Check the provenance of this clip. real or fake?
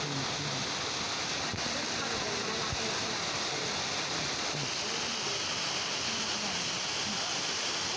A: real